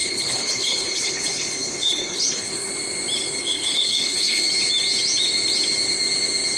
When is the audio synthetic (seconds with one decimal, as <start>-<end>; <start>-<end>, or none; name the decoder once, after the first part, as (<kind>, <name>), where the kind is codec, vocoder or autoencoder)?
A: 0.0-2.7 (codec, HILCodec); 3.4-4.5